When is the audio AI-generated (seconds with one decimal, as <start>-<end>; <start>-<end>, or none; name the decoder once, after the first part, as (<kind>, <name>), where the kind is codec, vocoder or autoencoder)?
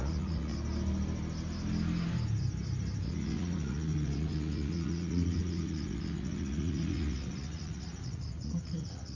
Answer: 0.0-0.5 (vocoder, Vocos); 3.0-9.2